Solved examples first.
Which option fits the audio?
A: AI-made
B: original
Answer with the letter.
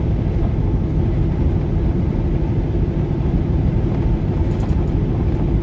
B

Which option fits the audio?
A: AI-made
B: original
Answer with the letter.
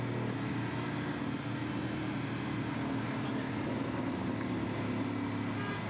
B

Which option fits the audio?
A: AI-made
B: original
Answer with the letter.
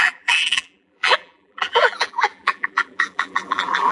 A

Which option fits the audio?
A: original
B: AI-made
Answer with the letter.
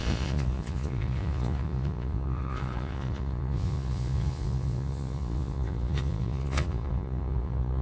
B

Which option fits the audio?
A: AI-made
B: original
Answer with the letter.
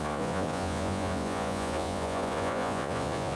A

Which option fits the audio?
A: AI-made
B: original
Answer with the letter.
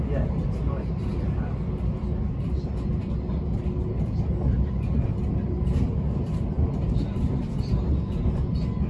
B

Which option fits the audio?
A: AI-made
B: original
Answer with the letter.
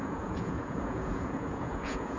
A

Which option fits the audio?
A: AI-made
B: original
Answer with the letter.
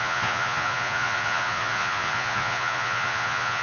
A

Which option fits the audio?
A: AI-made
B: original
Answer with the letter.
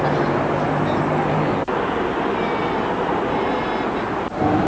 B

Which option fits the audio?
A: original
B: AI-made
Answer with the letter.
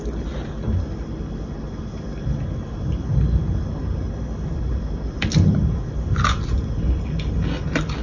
A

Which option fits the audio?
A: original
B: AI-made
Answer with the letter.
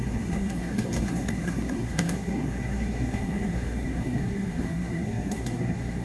B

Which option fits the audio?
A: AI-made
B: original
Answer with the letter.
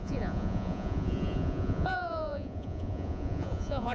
A